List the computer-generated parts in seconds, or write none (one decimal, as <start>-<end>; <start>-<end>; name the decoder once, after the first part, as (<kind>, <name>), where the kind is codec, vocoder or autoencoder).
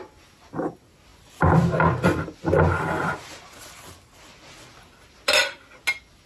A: none